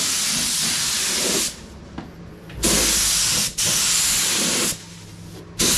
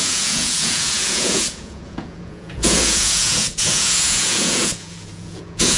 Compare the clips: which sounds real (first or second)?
first